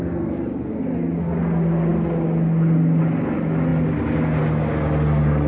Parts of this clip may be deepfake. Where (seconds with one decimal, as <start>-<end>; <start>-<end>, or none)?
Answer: none